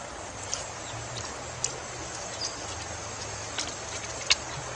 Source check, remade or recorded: recorded